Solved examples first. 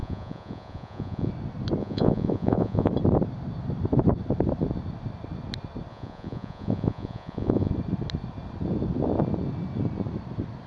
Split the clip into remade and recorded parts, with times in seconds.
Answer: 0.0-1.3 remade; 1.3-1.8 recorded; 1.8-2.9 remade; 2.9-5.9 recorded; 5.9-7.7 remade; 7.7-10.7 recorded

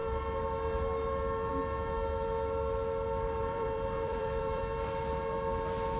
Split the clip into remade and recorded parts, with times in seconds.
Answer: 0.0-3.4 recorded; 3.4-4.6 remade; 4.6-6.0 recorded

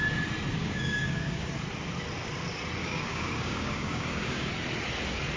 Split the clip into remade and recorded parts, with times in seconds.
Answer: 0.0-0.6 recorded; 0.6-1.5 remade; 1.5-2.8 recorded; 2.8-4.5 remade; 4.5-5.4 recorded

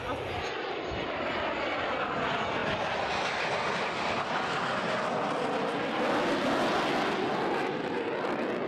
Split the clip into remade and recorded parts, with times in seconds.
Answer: 0.0-8.7 recorded

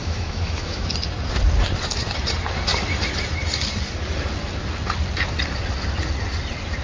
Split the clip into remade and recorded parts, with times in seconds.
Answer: 0.0-0.9 remade; 0.9-6.8 recorded

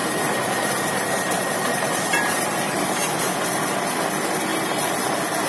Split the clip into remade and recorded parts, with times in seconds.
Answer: 0.0-3.3 remade; 3.3-4.5 recorded; 4.5-5.1 remade; 5.1-5.5 recorded

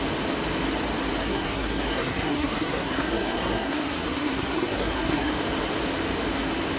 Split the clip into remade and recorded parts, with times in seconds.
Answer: 0.0-1.2 recorded; 1.2-5.3 remade; 5.3-6.8 recorded